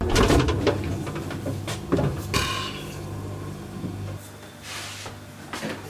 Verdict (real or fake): real